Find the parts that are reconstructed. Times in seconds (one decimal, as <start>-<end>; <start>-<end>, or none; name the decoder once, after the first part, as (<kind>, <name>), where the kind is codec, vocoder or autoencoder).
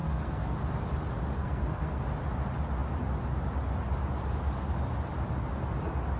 0.0-0.6 (codec, SNAC); 1.4-2.0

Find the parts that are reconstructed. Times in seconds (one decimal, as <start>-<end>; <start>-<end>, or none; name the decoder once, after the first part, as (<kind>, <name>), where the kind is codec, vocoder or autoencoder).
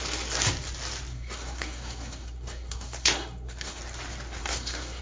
1.1-3.8 (codec, SNAC); 4.4-5.0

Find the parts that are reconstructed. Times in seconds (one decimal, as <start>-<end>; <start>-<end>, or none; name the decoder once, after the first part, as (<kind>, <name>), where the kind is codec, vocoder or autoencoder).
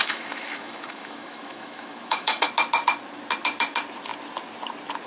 0.0-2.5 (autoencoder, DAC-VAE)